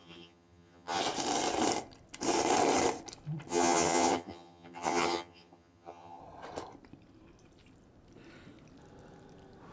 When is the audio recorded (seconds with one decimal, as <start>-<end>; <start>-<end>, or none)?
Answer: 1.0-3.5; 6.2-9.7